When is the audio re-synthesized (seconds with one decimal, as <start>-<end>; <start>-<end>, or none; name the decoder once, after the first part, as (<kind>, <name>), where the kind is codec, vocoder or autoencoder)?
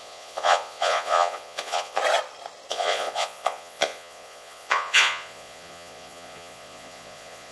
0.0-2.0 (vocoder, Vocos); 2.7-7.5